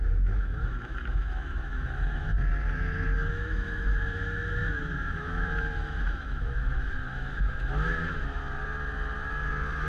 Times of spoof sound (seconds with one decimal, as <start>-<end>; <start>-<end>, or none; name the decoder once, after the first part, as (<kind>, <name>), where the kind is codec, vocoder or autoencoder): 0.0-2.3 (autoencoder, DAC-VAE); 3.3-8.4